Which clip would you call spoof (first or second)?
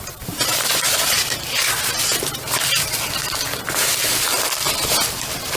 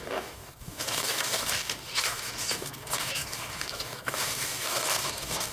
second